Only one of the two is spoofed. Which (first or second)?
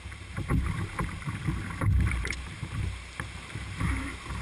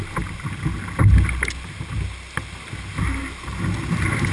first